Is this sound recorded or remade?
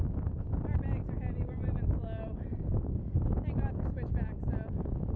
recorded